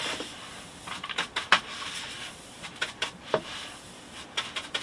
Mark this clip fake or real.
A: fake